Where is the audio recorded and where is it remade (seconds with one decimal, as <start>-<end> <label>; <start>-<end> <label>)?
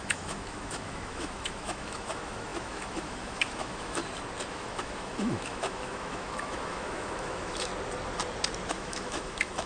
0.0-4.0 remade; 4.0-4.5 recorded; 4.5-7.7 remade; 7.7-8.7 recorded; 8.7-9.7 remade